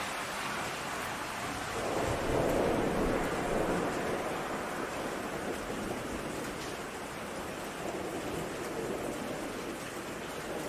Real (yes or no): yes